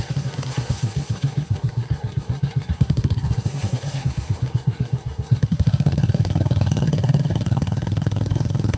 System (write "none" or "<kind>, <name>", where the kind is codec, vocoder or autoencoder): codec, SNAC